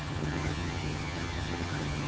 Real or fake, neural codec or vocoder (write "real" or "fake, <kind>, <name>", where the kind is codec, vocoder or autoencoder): fake, vocoder, HiFi-GAN